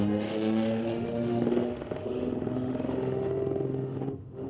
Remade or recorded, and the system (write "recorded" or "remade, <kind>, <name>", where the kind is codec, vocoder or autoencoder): remade, autoencoder, DAC-VAE